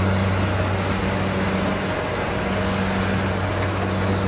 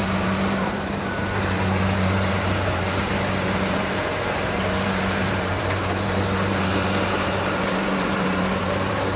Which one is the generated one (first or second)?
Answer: second